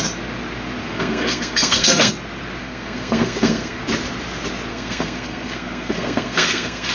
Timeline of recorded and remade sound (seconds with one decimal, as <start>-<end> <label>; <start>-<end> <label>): 0.0-0.8 recorded; 0.8-2.1 remade; 2.1-2.6 recorded; 2.6-3.8 remade; 3.8-4.7 recorded; 4.7-6.9 remade